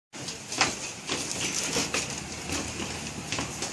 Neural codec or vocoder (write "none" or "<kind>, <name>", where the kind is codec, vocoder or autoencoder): none